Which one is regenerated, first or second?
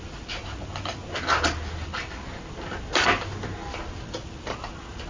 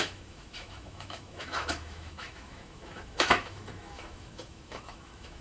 second